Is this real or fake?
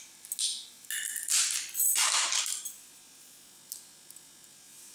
real